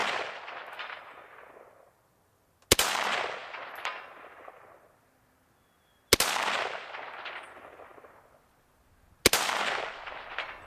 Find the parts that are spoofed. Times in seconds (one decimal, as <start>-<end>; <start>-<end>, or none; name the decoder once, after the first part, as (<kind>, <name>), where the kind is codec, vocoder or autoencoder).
none